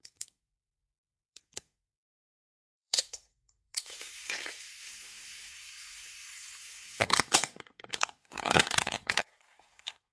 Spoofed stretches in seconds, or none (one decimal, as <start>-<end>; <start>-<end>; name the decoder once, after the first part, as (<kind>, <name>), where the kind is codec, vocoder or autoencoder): 0.0-10.1 (codec, SNAC)